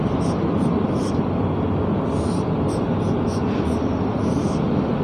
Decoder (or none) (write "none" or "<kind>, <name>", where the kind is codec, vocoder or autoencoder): none